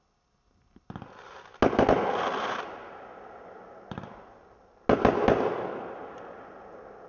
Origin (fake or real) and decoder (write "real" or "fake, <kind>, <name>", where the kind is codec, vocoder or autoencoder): real